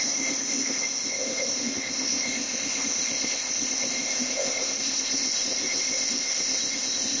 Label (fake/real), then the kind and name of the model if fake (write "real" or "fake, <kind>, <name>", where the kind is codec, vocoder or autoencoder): fake, codec, ZipCodec